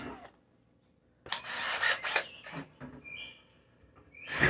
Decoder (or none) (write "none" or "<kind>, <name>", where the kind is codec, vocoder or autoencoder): none